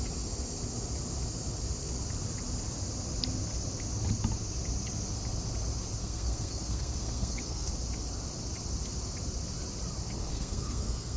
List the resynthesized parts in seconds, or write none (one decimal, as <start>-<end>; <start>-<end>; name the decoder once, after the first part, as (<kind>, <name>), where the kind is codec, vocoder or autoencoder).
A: 6.0-7.7 (codec, SNAC); 10.2-11.2